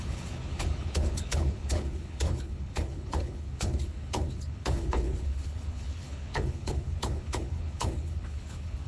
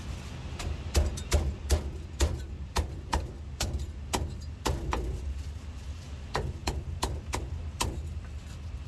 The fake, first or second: first